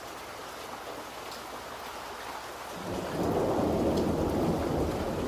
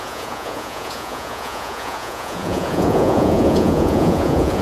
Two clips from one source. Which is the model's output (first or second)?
second